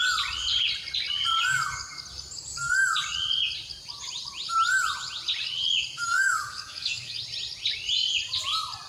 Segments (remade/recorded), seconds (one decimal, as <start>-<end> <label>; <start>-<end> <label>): 0.0-6.0 recorded; 6.0-7.2 remade; 7.2-8.9 recorded